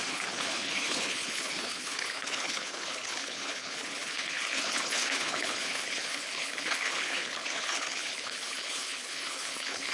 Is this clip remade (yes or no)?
yes